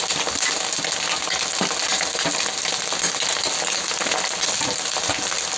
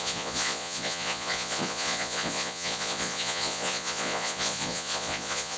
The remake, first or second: second